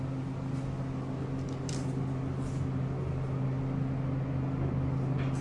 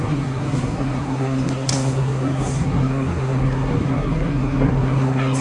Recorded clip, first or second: first